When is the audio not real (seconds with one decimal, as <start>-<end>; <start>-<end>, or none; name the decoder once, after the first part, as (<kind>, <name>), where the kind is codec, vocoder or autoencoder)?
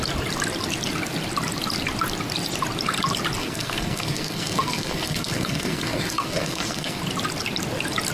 3.4-7.0 (codec, SNAC)